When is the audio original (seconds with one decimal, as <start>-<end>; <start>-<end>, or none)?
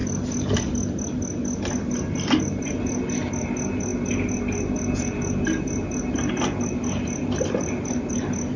0.0-8.6